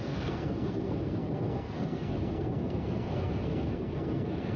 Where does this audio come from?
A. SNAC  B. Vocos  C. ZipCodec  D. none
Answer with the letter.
A